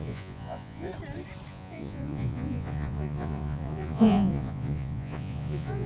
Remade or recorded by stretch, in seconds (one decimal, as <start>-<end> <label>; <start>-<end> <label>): 0.0-0.9 remade; 0.9-1.5 recorded; 1.5-5.9 remade